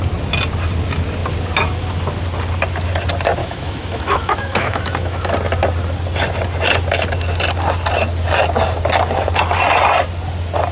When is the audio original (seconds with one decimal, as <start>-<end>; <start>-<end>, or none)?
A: 0.0-3.4; 5.3-10.7